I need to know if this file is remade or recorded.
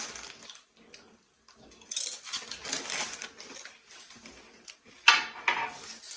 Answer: recorded